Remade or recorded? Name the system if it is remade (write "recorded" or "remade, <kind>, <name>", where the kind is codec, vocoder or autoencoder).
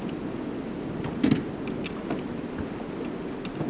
recorded